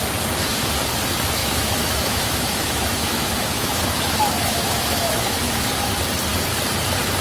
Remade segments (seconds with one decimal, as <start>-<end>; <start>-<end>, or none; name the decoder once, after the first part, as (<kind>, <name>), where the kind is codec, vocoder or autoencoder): 1.4-5.7 (autoencoder, DAC-VAE)